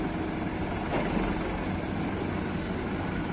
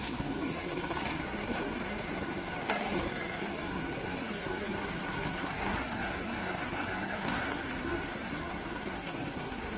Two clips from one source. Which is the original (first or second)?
first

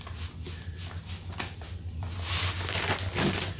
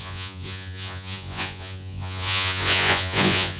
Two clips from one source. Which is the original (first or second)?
first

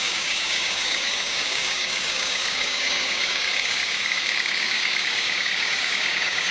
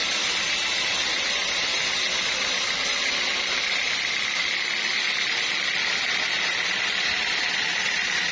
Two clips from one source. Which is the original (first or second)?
second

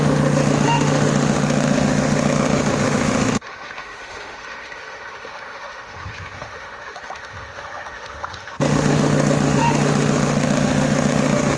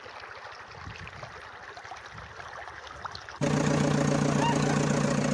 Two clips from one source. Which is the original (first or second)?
second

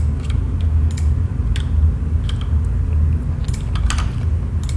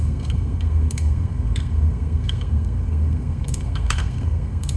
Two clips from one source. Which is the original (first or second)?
first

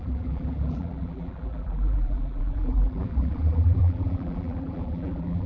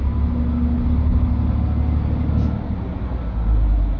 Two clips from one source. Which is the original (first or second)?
second